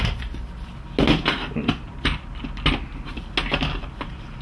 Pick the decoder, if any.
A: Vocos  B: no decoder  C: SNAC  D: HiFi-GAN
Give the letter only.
B